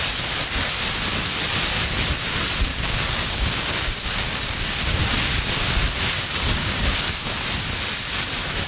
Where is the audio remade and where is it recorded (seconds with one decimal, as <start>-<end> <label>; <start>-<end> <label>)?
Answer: 0.0-2.7 recorded; 2.7-5.0 remade; 5.0-6.6 recorded; 6.6-7.2 remade; 7.2-8.7 recorded